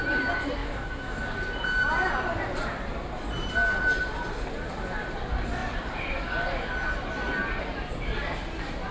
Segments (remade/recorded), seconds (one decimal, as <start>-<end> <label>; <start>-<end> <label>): 0.0-0.6 recorded; 0.6-1.2 remade; 1.2-8.9 recorded